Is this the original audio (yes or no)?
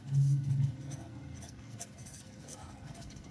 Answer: no